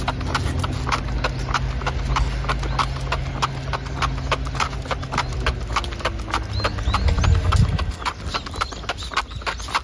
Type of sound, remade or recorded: recorded